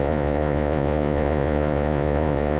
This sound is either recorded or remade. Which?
remade